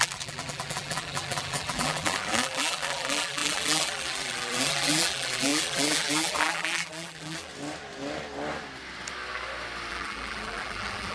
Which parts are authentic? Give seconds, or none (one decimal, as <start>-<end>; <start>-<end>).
7.5-9.9